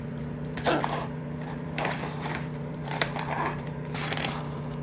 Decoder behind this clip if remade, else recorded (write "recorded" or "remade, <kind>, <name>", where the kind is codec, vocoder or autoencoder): remade, vocoder, BigVGAN v2